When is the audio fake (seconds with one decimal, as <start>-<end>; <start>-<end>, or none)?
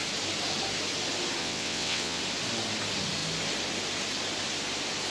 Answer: 1.4-2.2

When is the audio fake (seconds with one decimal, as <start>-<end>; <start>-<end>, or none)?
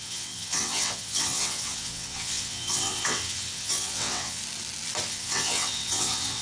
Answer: 0.0-4.4; 5.1-6.4